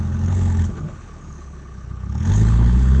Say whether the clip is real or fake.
fake